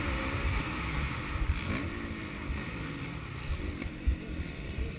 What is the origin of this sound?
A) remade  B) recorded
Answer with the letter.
B